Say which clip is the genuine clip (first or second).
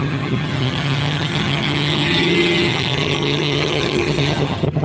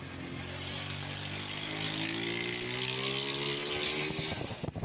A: second